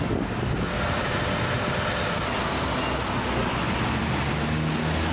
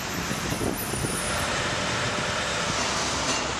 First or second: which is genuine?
first